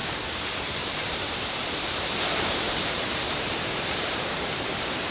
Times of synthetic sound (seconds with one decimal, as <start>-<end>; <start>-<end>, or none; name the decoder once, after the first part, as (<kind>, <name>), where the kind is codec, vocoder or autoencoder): 0.0-5.1 (vocoder, BigVGAN v2)